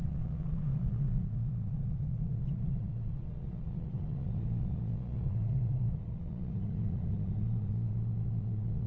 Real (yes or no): no